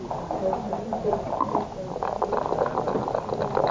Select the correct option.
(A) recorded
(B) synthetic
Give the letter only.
A